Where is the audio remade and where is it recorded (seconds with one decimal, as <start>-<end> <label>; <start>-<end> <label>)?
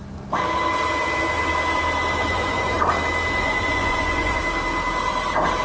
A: 0.0-2.3 recorded; 2.3-2.8 remade; 2.8-3.4 recorded; 3.4-4.4 remade; 4.4-5.6 recorded